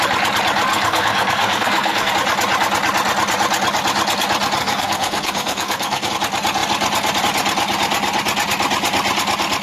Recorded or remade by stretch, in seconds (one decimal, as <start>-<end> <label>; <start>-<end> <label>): 0.0-0.7 recorded; 0.7-2.1 remade; 2.1-4.6 recorded; 4.6-6.1 remade; 6.1-9.6 recorded